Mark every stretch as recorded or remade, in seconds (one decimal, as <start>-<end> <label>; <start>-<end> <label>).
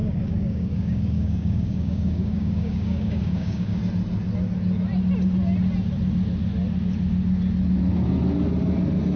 0.0-3.8 remade; 3.8-9.2 recorded